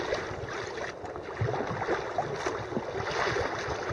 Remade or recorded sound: recorded